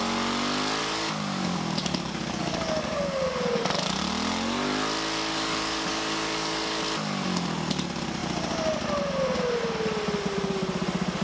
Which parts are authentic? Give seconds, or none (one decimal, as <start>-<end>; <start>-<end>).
0.0-0.8; 4.0-5.3; 6.8-11.2